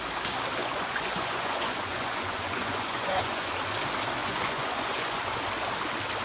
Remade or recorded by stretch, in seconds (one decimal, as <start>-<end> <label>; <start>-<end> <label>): 0.0-0.6 recorded; 0.6-3.5 remade; 3.5-4.2 recorded; 4.2-5.4 remade; 5.4-6.2 recorded